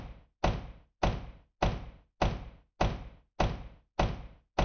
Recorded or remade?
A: recorded